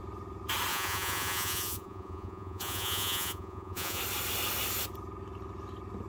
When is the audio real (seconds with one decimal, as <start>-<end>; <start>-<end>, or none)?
0.0-0.7; 4.0-6.1